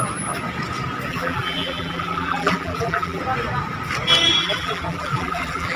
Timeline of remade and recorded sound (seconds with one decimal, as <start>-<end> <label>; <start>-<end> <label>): 0.0-1.1 recorded; 1.1-3.2 remade; 3.2-4.4 recorded; 4.4-5.8 remade